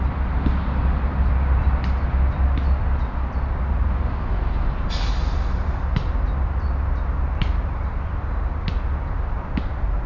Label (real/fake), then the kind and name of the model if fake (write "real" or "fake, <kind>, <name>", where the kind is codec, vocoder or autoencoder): real